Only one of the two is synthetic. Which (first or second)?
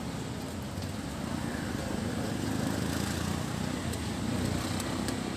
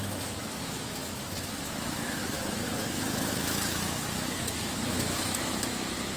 second